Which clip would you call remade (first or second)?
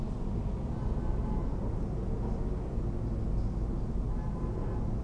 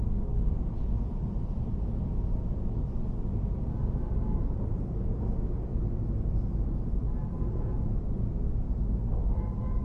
second